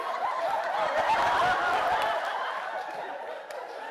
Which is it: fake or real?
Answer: real